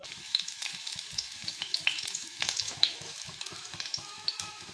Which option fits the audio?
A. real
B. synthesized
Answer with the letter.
B